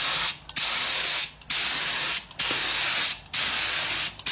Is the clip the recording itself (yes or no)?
yes